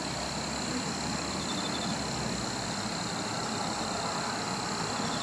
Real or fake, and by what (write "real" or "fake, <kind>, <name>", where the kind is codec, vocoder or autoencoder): real